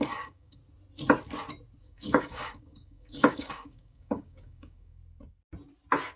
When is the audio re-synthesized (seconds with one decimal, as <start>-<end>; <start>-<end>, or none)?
0.0-0.6; 1.8-5.0